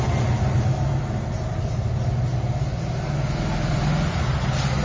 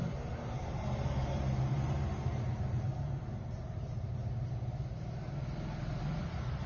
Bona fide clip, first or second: first